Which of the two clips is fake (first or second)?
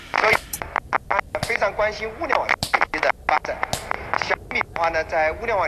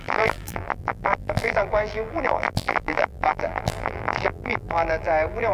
second